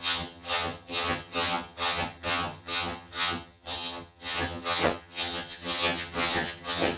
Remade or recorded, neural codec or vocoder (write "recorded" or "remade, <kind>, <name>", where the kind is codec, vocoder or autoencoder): remade, vocoder, HiFi-GAN